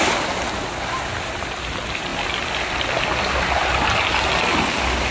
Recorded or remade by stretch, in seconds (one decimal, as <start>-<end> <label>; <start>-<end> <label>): 0.0-5.1 recorded